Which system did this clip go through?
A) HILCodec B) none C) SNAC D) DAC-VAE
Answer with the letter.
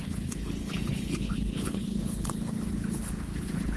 A